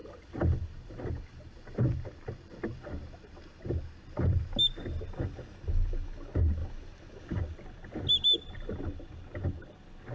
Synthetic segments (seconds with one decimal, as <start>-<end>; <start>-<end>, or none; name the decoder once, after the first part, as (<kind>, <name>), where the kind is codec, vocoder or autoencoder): 0.0-3.7 (vocoder, BigVGAN v2)